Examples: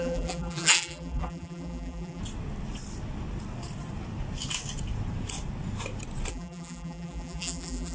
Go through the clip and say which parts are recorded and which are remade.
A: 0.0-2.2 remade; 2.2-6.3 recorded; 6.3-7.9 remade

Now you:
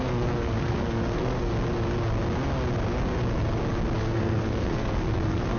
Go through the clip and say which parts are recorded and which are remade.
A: 0.0-1.5 remade; 1.5-4.0 recorded; 4.0-5.6 remade

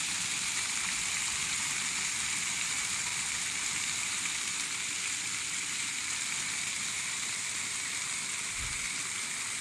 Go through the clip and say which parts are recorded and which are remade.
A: 0.0-3.1 recorded; 3.1-4.5 remade; 4.5-9.6 recorded

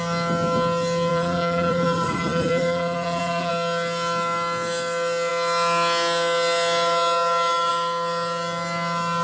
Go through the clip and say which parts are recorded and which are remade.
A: 0.0-1.1 recorded; 1.1-3.5 remade; 3.5-9.2 recorded

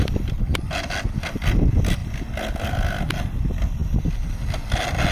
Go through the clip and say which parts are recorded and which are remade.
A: 0.0-5.1 recorded

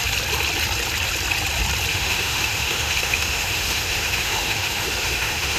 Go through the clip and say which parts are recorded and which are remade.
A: 0.0-1.9 recorded; 1.9-5.6 remade